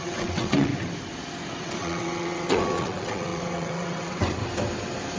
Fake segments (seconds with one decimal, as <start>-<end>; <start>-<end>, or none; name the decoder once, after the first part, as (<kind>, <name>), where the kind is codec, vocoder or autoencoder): 0.0-0.7 (vocoder, WaveNeXt); 1.6-4.4